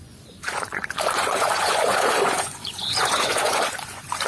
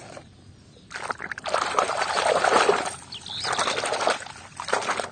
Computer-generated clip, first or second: first